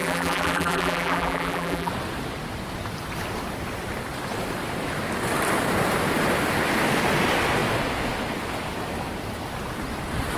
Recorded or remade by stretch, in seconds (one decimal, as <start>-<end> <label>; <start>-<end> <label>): 0.0-1.9 remade; 1.9-10.4 recorded